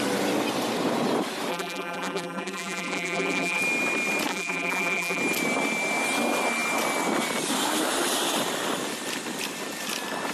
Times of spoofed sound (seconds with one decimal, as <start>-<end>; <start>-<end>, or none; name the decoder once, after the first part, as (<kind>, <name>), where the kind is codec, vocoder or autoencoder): 1.5-3.6 (vocoder, BigVGAN v2); 4.3-5.2